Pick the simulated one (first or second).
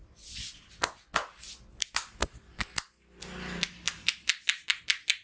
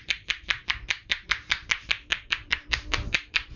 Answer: second